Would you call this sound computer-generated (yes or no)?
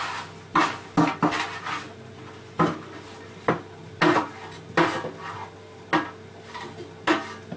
no